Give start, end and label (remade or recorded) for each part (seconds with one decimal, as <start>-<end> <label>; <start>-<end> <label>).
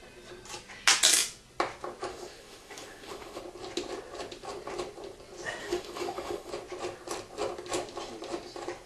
0.0-2.1 recorded; 2.1-3.4 remade; 3.4-5.6 recorded; 5.6-6.5 remade; 6.5-8.9 recorded